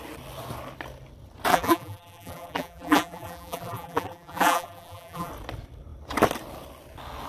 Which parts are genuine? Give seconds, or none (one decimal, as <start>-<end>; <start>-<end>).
0.0-1.5; 5.3-7.3